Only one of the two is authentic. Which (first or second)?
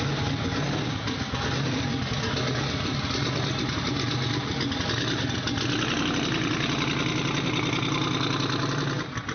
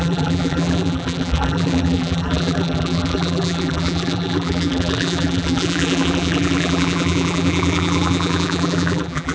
first